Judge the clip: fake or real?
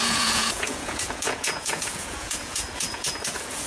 fake